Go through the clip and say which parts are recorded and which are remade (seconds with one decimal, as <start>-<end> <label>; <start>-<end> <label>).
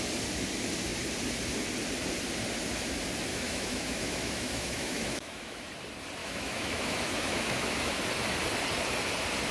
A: 0.0-3.3 recorded; 3.3-5.7 remade; 5.7-6.2 recorded; 6.2-8.0 remade; 8.0-9.5 recorded